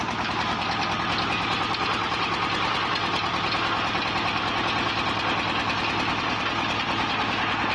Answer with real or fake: real